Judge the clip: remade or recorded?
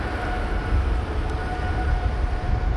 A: recorded